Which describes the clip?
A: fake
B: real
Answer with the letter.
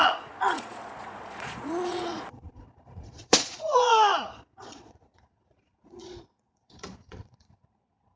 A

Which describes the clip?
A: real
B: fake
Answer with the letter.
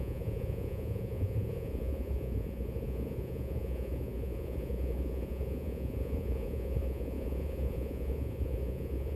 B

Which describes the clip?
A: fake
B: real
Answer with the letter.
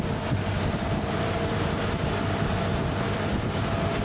B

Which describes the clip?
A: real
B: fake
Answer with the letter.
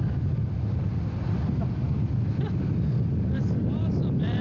A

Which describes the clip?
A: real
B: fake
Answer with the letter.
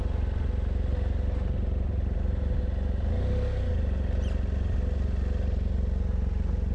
A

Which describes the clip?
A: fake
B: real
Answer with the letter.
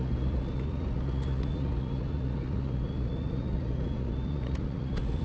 A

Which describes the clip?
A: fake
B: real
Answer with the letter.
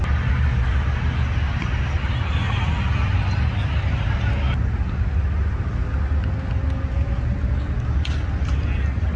B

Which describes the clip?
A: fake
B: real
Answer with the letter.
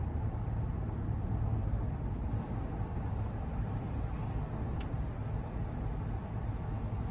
B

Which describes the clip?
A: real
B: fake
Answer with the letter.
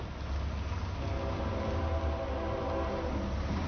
A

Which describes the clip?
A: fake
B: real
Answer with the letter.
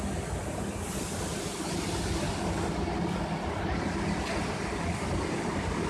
B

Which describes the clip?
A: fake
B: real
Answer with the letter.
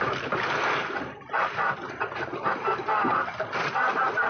B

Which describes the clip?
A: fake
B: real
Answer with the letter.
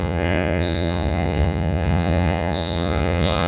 A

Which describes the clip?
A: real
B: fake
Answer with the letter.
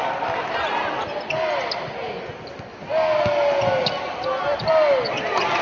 A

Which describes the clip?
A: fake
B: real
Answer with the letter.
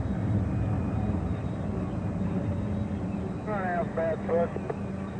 B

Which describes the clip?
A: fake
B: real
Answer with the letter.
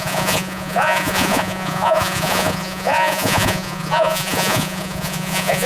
A